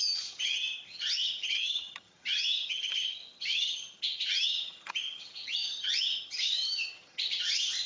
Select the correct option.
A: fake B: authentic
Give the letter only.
A